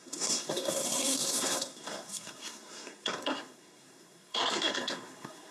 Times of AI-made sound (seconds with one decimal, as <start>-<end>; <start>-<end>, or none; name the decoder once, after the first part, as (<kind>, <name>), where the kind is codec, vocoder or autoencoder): 0.0-5.5 (codec, SNAC)